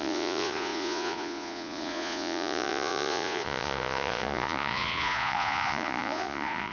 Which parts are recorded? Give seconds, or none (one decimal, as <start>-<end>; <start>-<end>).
none